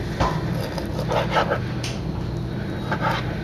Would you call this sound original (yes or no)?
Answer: yes